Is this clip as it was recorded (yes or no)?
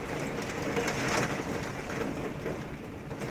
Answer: yes